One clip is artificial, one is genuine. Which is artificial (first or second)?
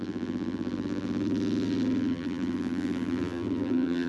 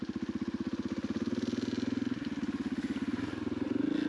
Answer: first